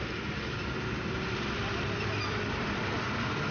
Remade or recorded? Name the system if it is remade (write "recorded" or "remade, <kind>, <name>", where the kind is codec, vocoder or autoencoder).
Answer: remade, vocoder, BigVGAN v2